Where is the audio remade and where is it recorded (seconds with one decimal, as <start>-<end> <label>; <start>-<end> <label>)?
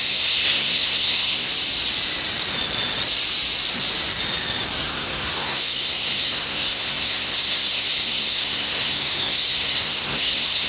0.0-1.5 remade; 1.5-4.8 recorded; 4.8-10.7 remade